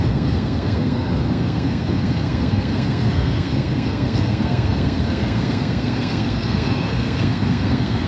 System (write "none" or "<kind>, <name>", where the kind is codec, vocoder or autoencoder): codec, SNAC